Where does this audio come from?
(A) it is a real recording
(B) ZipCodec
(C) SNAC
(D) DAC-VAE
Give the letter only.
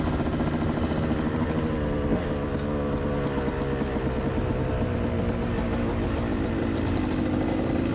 A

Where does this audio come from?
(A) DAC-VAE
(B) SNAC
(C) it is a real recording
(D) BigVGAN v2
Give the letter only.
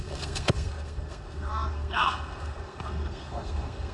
B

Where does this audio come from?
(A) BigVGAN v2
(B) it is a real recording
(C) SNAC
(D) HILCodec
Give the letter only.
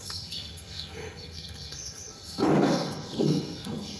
C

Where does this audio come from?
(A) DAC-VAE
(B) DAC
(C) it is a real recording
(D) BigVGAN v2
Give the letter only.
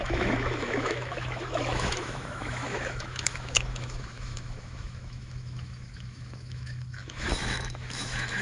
A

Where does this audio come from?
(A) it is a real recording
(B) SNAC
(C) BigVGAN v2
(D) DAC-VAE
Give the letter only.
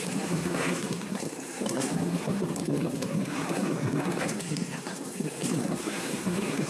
B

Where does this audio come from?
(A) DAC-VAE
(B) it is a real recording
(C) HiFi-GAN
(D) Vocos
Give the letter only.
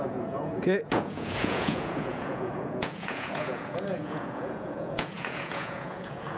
D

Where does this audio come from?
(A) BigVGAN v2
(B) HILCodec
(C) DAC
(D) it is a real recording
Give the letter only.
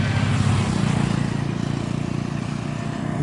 D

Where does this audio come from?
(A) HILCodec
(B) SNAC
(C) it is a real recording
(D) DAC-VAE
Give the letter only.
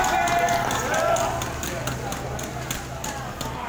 C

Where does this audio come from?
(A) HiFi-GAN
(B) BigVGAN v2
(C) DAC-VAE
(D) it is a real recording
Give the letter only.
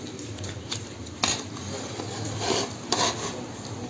B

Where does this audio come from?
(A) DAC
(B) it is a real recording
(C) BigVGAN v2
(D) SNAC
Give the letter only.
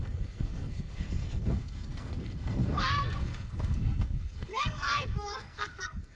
D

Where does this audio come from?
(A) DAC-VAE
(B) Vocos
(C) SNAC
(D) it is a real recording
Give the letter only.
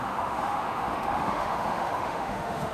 A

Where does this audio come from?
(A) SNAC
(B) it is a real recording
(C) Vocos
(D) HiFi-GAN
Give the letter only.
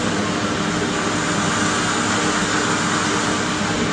B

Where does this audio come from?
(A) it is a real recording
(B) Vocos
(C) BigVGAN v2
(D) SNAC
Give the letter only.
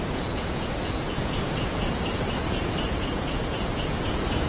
B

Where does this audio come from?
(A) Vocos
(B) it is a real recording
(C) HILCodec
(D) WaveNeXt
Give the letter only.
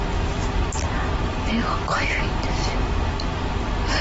B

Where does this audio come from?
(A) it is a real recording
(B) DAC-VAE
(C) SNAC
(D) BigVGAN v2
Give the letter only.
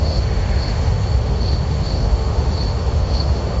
B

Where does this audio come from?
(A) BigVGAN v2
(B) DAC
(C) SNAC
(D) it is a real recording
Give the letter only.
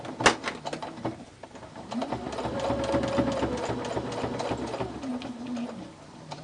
D